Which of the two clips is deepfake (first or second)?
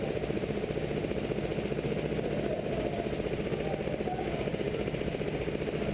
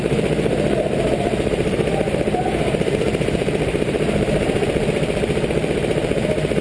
second